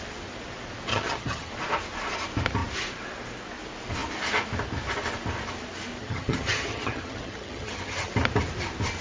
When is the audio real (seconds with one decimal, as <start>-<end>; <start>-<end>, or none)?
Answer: 0.0-0.9; 1.5-6.0; 8.1-9.0

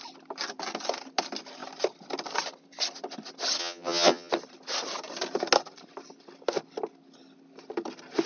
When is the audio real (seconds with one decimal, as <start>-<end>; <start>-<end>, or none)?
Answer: 0.0-3.6; 4.3-8.3

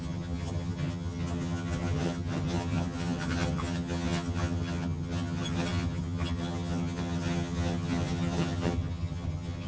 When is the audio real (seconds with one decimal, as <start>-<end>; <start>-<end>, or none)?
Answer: none

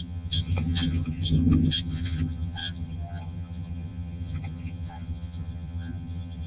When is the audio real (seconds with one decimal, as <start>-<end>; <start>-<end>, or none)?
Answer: none

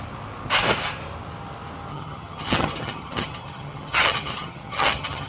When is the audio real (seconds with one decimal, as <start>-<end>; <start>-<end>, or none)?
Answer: 0.0-1.9

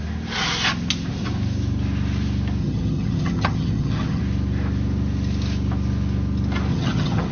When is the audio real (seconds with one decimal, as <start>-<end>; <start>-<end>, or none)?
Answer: 0.0-2.6; 4.2-6.7